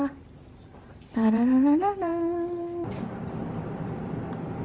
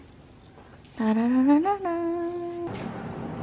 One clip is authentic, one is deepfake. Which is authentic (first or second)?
second